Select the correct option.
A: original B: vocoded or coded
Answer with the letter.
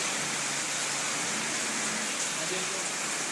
A